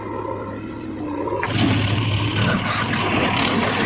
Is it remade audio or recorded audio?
recorded